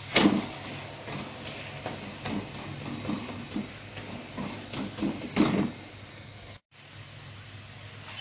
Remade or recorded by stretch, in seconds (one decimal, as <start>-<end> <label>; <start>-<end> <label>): 0.0-6.1 recorded; 6.1-6.7 remade; 6.7-8.2 recorded